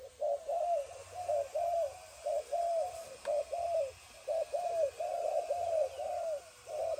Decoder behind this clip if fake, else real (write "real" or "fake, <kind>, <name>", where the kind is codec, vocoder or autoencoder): real